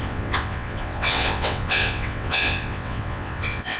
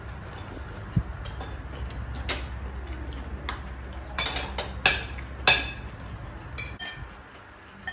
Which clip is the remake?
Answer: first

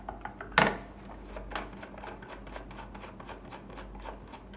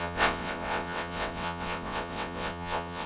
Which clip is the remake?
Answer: second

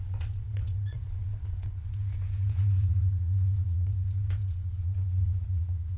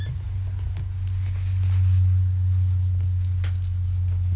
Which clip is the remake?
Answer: first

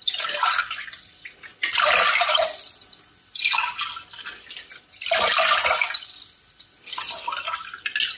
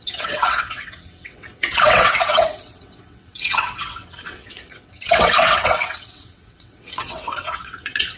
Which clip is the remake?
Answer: second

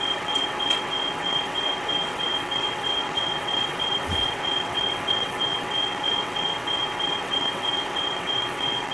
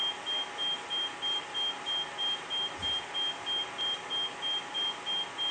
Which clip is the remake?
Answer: first